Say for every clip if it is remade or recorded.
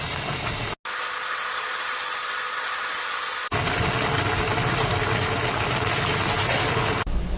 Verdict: recorded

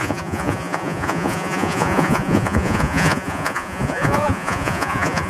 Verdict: remade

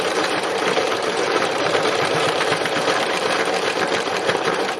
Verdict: remade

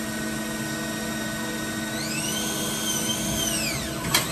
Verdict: recorded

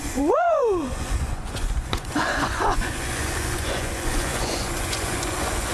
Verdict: remade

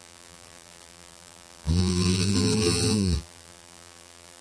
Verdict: remade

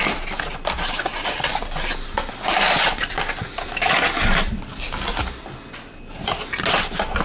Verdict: recorded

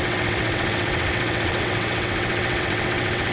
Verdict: remade